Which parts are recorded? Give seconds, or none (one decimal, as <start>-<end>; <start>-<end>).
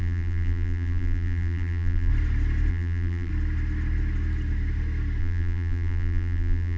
2.1-2.7; 3.3-5.2